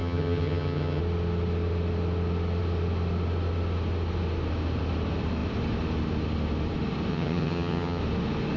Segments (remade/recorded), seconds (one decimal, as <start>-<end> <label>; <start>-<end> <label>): 0.0-1.0 remade; 1.0-7.1 recorded; 7.1-8.0 remade; 8.0-8.6 recorded